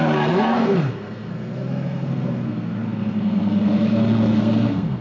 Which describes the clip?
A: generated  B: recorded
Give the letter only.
A